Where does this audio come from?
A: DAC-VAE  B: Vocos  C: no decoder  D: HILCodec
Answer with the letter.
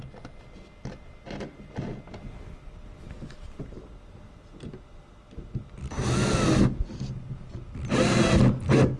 C